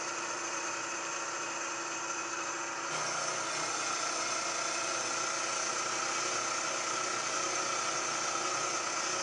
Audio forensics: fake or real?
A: real